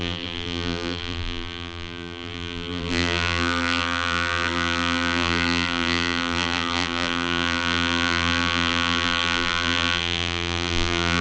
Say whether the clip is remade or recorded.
remade